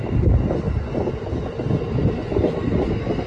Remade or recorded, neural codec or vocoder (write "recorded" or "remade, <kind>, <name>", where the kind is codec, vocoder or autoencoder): recorded